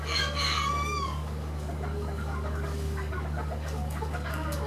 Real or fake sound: fake